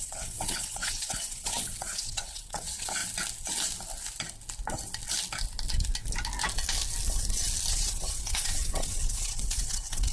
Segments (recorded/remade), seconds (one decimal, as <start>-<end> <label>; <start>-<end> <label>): 0.0-3.0 remade; 3.0-7.7 recorded; 7.7-10.1 remade